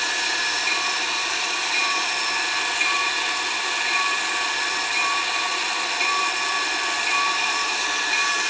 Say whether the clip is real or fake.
fake